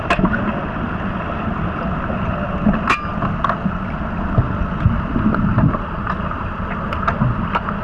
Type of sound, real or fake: real